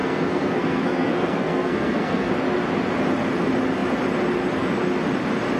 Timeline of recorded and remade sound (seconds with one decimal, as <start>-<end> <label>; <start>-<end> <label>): 0.0-2.3 remade; 2.3-5.6 recorded